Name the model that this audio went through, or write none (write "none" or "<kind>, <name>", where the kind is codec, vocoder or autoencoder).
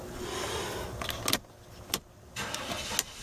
none